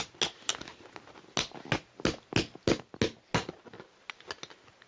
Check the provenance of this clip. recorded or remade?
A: recorded